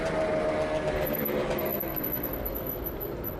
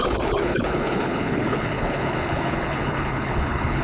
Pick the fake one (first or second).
second